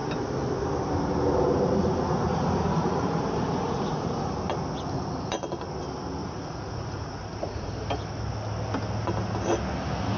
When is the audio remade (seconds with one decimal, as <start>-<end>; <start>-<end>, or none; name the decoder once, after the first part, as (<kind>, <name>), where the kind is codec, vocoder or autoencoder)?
1.8-4.3 (vocoder, Vocos); 6.2-7.7